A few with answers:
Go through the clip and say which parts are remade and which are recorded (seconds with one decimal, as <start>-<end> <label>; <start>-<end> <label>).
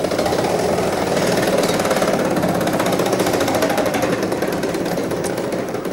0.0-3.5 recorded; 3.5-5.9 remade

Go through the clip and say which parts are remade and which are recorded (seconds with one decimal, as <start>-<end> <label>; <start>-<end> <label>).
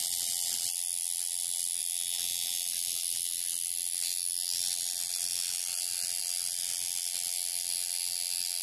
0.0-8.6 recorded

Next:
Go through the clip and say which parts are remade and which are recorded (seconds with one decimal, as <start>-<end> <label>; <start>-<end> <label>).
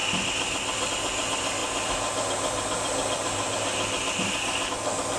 0.0-5.2 recorded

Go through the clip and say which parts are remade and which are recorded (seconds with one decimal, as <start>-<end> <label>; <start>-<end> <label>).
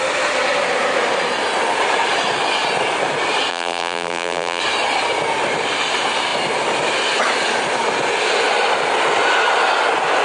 0.0-3.5 recorded; 3.5-4.6 remade; 4.6-10.2 recorded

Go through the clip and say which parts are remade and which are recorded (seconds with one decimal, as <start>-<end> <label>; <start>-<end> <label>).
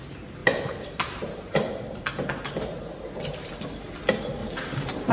0.0-0.4 recorded; 0.4-3.5 remade; 3.5-4.4 recorded; 4.4-5.1 remade